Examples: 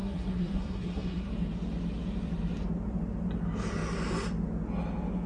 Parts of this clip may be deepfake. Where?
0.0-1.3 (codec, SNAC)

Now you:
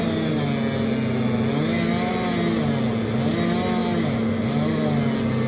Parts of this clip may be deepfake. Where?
none

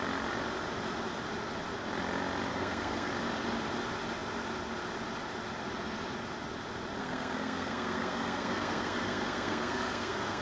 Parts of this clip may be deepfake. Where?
2.5-3.1 (codec, SNAC); 7.0-10.4

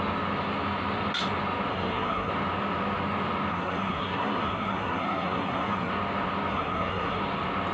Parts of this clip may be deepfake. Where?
1.7-2.3 (codec, SNAC); 3.5-5.9; 6.5-7.2

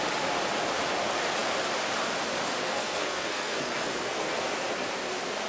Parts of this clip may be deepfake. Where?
2.6-4.3 (codec, SNAC)

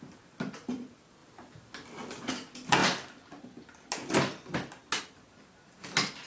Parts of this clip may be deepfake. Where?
none

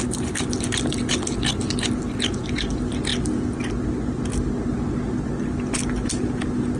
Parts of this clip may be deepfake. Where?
none

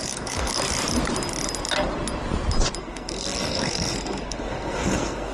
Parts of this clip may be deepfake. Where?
0.0-0.5 (codec, SNAC); 2.8-5.3